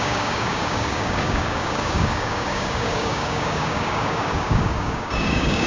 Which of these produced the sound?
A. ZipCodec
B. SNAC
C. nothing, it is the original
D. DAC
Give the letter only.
D